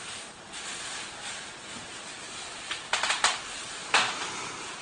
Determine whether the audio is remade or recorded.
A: remade